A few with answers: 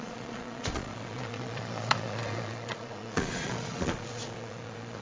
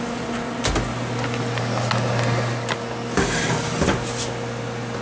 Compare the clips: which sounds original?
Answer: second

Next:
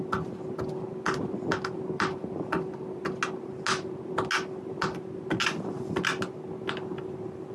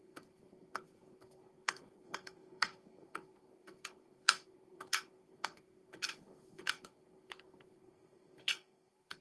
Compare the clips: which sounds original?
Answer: first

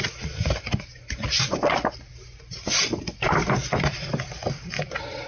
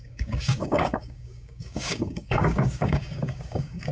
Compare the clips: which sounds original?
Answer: first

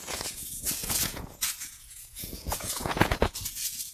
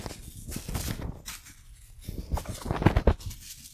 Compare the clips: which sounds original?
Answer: second